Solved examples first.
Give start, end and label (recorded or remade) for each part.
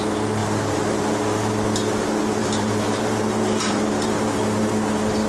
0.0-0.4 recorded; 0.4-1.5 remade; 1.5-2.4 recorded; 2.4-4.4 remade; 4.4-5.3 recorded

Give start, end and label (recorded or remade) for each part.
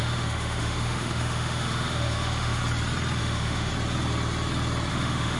0.0-2.6 remade; 2.6-3.2 recorded; 3.2-3.7 remade; 3.7-4.9 recorded; 4.9-5.4 remade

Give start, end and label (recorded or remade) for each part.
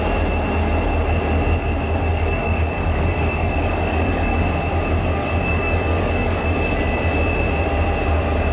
0.0-2.1 recorded; 2.1-4.4 remade; 4.4-5.1 recorded; 5.1-6.8 remade; 6.8-8.5 recorded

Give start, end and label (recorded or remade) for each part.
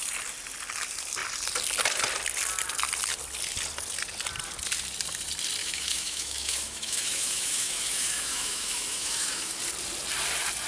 0.0-5.6 recorded; 5.6-9.6 remade; 9.6-10.7 recorded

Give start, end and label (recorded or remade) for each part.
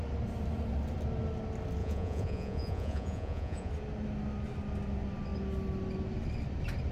0.0-1.8 recorded; 1.8-3.7 remade; 3.7-6.9 recorded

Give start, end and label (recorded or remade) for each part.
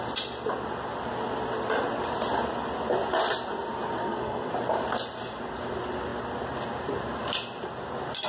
0.0-4.0 recorded; 4.0-4.5 remade; 4.5-8.3 recorded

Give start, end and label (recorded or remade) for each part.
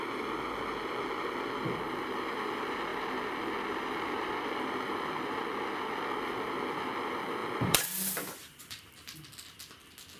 0.0-7.4 recorded; 7.4-8.9 remade; 8.9-10.2 recorded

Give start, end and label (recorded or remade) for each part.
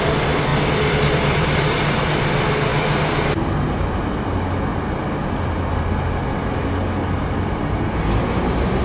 0.0-0.5 recorded; 0.5-2.2 remade; 2.2-2.7 recorded; 2.7-3.7 remade; 3.7-7.0 recorded; 7.0-8.8 remade